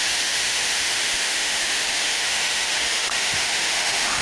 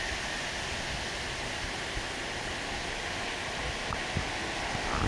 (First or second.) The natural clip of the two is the second